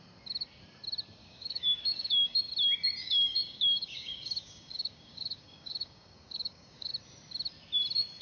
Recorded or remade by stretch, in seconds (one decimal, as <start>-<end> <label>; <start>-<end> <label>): 0.0-1.2 recorded; 1.2-2.4 remade; 2.4-3.0 recorded; 3.0-6.9 remade; 6.9-8.2 recorded